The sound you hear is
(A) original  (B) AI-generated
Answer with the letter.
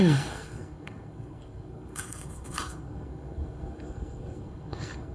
B